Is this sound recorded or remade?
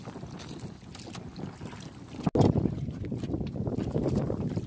recorded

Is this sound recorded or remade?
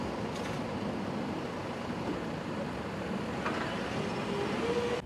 recorded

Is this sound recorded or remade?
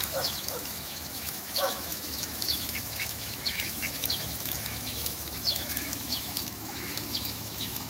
remade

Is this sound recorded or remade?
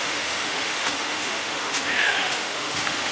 remade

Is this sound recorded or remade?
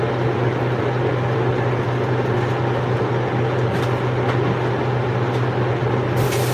recorded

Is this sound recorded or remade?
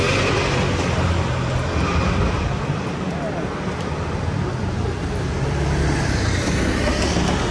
recorded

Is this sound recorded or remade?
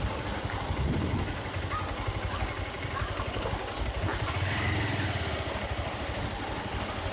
recorded